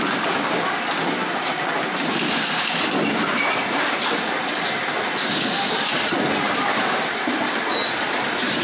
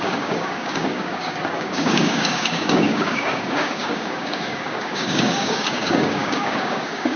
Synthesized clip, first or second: second